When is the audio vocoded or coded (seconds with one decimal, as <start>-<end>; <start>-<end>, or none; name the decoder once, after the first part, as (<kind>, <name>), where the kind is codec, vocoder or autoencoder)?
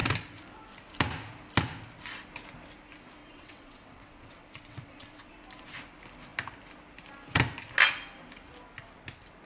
3.2-5.3 (vocoder, WaveNeXt)